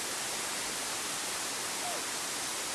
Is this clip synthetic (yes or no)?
no